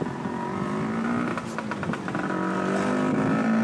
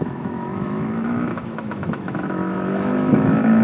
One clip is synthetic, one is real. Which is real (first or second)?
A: first